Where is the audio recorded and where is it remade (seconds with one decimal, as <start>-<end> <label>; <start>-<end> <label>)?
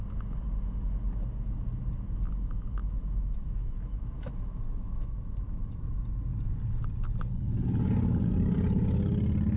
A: 0.0-2.8 recorded; 2.8-5.8 remade; 5.8-9.6 recorded